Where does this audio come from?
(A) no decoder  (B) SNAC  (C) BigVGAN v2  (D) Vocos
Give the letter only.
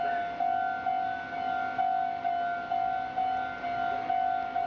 A